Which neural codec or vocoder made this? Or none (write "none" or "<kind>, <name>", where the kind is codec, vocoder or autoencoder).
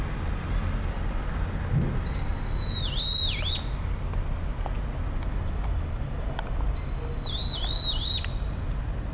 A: none